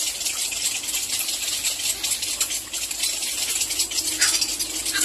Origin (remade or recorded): recorded